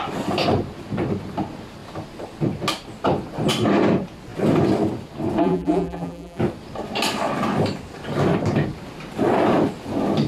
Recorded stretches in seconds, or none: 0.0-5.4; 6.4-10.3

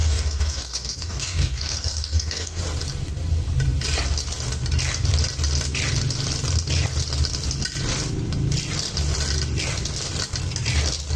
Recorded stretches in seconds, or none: 2.6-11.2

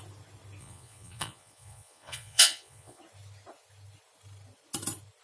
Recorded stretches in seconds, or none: 0.0-0.6; 3.0-5.2

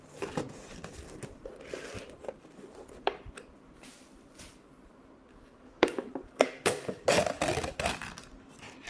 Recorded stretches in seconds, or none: 0.0-5.3; 7.1-8.9

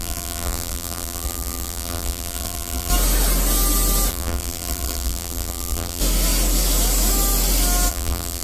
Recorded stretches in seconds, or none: 2.9-4.1; 6.0-7.9